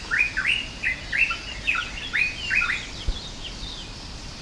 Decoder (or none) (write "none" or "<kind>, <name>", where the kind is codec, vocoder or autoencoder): vocoder, BigVGAN v2